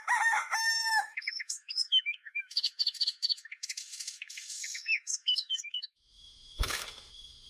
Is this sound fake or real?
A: fake